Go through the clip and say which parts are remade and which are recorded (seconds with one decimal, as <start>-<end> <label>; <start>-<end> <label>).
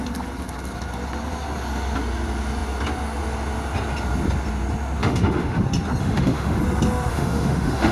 0.0-5.0 recorded; 5.0-5.6 remade; 5.6-6.0 recorded; 6.0-6.6 remade; 6.6-7.1 recorded; 7.1-7.9 remade